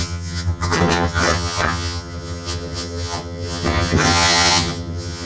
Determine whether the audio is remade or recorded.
remade